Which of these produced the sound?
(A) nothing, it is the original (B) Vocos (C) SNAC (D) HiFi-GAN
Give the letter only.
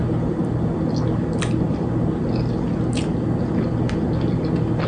A